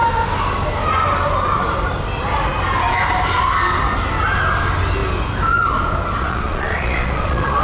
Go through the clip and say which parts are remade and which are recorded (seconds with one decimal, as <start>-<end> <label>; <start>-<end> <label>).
0.0-6.2 recorded; 6.2-7.6 remade